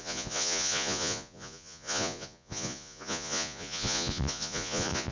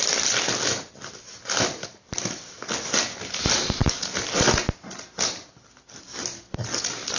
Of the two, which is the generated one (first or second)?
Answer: first